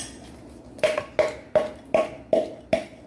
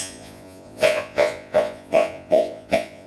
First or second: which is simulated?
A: second